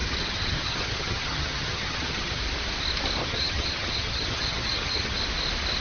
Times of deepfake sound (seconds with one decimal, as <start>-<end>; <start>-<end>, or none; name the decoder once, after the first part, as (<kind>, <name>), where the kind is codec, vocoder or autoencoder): 0.0-2.4 (vocoder, HiFi-GAN); 3.2-5.2